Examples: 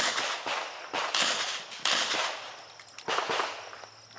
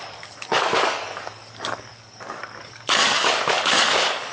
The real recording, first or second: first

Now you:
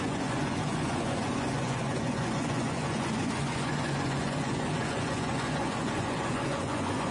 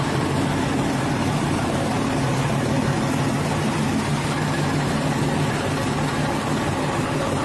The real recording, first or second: second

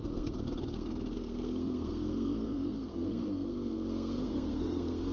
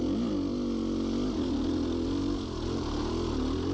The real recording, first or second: second